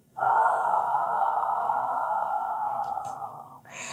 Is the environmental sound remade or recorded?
remade